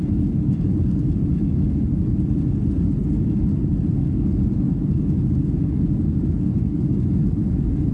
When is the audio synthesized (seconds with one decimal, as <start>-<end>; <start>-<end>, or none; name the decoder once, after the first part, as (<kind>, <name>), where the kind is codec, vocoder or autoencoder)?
none